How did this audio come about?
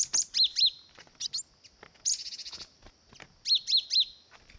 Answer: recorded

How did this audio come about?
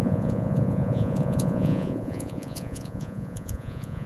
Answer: remade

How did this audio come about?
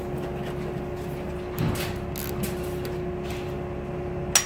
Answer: recorded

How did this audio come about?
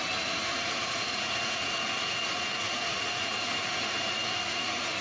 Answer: remade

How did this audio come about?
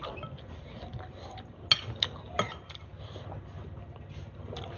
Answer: recorded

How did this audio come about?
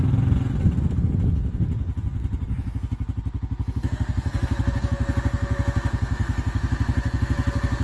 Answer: recorded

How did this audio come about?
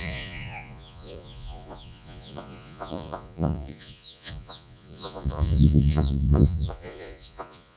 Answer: remade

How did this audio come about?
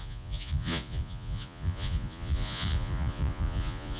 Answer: remade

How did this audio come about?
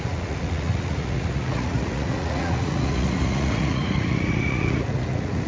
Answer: remade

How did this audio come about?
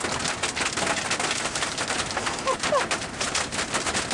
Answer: recorded